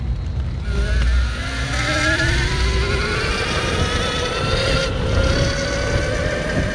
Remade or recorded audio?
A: recorded